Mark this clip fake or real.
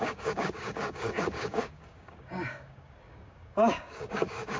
fake